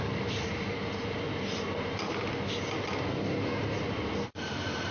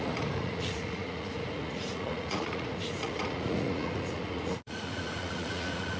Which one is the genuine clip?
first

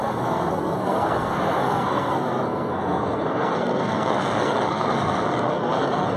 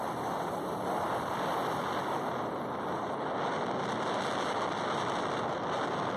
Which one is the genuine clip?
second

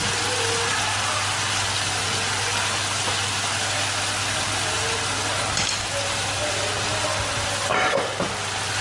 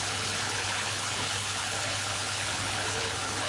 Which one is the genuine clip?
first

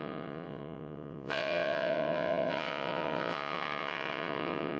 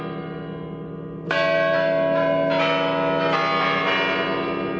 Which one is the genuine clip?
second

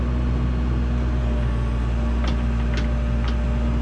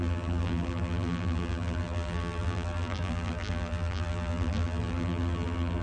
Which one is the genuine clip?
first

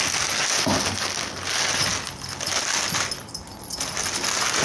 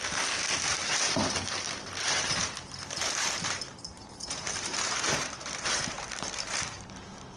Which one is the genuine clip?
first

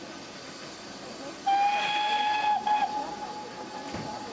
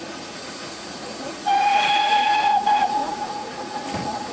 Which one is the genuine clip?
first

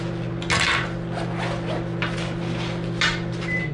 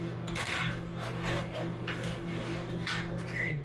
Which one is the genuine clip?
first